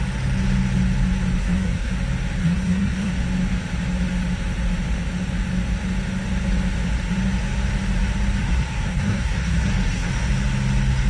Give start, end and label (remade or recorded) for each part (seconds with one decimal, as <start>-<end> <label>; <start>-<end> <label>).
0.0-1.4 recorded; 1.4-1.9 remade; 1.9-2.4 recorded; 2.4-3.1 remade; 3.1-8.4 recorded; 8.4-10.1 remade; 10.1-11.1 recorded